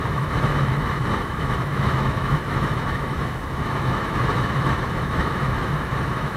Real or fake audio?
fake